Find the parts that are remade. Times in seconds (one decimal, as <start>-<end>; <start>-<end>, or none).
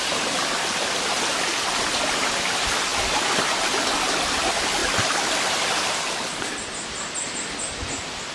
none